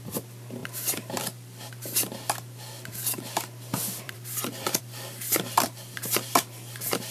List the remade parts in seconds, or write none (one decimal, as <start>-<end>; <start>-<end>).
0.0-7.1